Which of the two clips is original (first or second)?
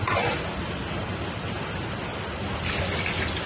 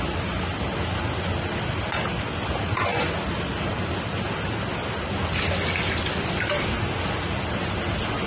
second